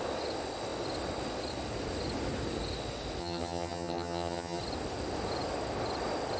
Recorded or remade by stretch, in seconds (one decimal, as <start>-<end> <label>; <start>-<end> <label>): 0.0-3.2 recorded; 3.2-4.6 remade; 4.6-6.4 recorded